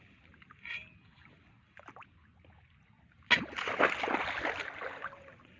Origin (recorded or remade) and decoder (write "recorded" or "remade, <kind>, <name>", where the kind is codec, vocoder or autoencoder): recorded